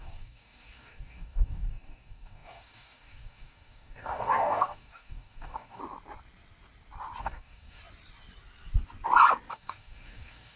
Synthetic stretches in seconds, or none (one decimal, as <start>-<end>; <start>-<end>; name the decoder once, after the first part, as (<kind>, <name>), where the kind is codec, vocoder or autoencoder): 0.0-5.8 (codec, DAC); 7.2-7.8; 9.5-10.6